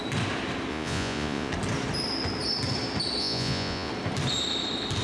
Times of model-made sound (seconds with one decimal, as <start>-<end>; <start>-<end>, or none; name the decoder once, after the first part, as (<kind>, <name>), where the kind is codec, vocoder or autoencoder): 0.7-1.5 (vocoder, Vocos); 3.2-3.9